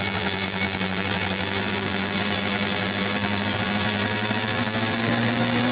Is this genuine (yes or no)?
no